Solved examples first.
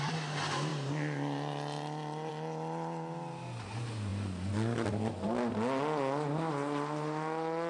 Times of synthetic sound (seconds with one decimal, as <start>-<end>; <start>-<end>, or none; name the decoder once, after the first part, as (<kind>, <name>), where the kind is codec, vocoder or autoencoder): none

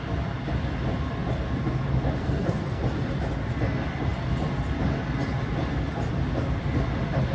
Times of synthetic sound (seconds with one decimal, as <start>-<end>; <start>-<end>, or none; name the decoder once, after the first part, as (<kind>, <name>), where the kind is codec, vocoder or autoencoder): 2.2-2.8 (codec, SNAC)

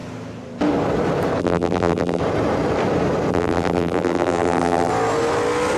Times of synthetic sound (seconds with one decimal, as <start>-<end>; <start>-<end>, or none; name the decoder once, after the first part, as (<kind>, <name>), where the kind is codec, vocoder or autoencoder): 1.4-2.2 (vocoder, BigVGAN v2); 3.3-4.9

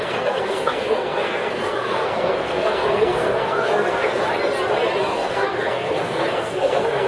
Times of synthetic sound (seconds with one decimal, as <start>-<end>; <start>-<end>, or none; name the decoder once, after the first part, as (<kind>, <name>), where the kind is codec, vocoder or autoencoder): 0.0-4.2 (codec, SNAC); 5.1-7.1